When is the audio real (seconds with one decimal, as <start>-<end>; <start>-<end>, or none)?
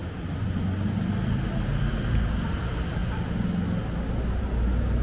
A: 0.0-5.0